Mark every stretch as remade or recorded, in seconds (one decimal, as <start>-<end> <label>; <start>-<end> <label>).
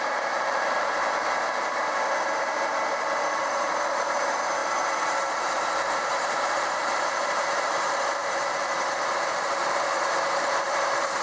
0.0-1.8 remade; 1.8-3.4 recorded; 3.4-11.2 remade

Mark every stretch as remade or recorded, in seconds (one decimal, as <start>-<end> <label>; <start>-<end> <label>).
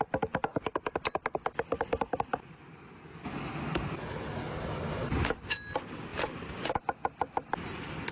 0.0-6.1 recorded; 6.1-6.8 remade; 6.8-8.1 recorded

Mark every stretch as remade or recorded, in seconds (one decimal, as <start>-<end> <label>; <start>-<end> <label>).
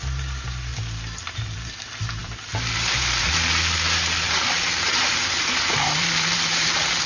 0.0-0.7 remade; 0.7-1.3 recorded; 1.3-7.1 remade